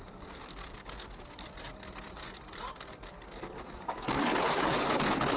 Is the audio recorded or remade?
recorded